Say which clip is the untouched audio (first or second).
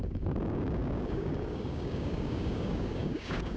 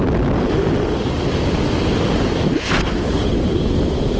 second